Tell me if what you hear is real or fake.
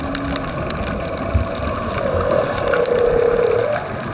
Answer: real